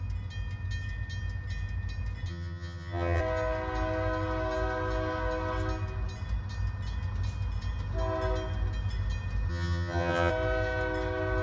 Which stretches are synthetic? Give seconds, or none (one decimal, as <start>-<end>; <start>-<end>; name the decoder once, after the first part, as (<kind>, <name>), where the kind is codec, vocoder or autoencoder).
2.3-3.2 (vocoder, HiFi-GAN); 9.5-10.3